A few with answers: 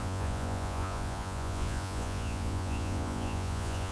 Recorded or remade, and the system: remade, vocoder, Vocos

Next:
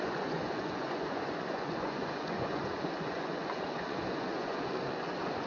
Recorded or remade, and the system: remade, vocoder, Vocos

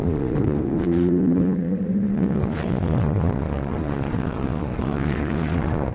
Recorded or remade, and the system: remade, vocoder, Vocos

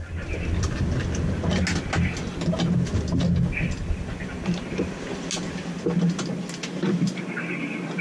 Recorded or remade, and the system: recorded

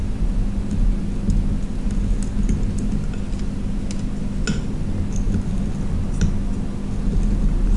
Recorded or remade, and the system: recorded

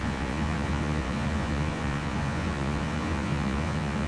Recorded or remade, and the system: remade, vocoder, Vocos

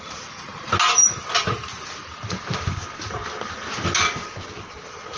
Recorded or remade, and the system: recorded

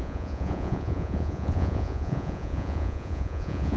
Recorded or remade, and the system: remade, vocoder, Vocos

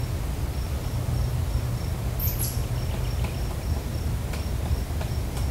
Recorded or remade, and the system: recorded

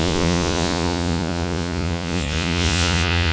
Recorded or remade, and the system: remade, vocoder, Vocos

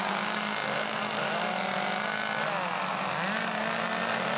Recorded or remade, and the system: recorded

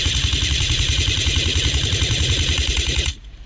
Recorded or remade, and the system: remade, vocoder, Vocos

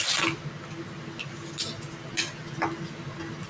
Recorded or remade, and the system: recorded